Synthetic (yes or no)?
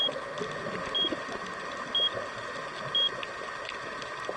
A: no